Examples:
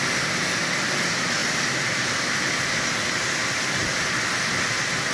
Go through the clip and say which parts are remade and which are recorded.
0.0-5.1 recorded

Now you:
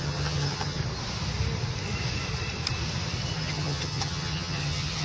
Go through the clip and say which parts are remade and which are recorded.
0.0-0.8 remade; 0.8-3.4 recorded; 3.4-5.0 remade

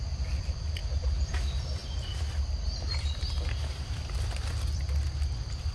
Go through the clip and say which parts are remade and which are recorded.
0.0-5.7 remade

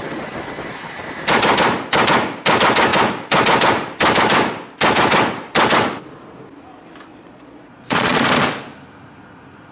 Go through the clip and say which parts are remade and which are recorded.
0.0-7.1 recorded; 7.1-8.3 remade; 8.3-9.7 recorded

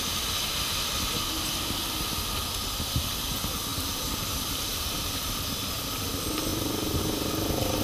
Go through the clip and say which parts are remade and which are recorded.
0.0-3.7 recorded; 3.7-5.0 remade; 5.0-6.5 recorded; 6.5-7.0 remade; 7.0-7.8 recorded

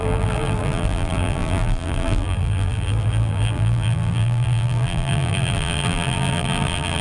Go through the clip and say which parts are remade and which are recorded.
0.0-7.0 remade

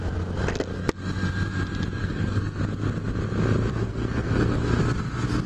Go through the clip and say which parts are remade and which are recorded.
0.0-2.0 recorded; 2.0-2.6 remade; 2.6-3.7 recorded; 3.7-4.8 remade; 4.8-5.5 recorded

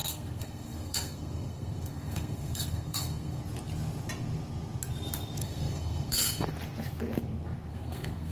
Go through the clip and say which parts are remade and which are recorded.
0.0-3.4 remade; 3.4-5.4 recorded; 5.4-6.5 remade; 6.5-7.7 recorded; 7.7-8.3 remade